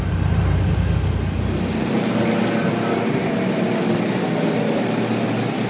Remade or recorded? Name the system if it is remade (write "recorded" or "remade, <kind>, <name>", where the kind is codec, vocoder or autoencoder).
recorded